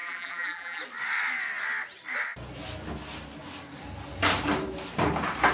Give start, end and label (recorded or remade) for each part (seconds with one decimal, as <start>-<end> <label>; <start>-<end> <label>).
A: 0.0-0.8 remade; 0.8-5.5 recorded